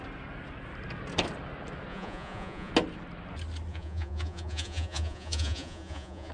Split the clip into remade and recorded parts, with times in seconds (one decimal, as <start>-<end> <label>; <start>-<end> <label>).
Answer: 0.0-1.9 recorded; 1.9-2.7 remade; 2.7-3.7 recorded; 3.7-6.3 remade